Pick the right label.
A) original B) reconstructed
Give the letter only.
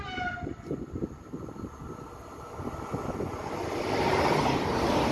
A